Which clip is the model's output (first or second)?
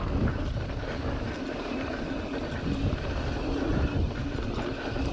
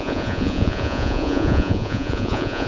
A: second